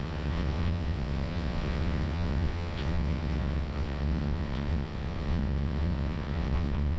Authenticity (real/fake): fake